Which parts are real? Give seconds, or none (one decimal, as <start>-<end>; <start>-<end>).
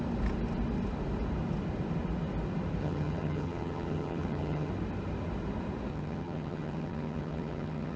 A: 0.0-2.8; 4.7-5.9